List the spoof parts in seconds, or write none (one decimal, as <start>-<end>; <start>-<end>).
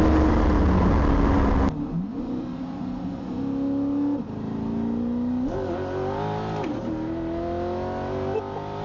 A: 2.1-3.4